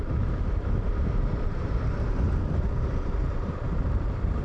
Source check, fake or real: fake